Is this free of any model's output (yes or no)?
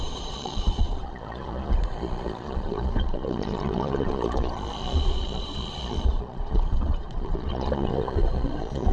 no